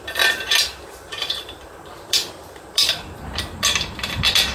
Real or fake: fake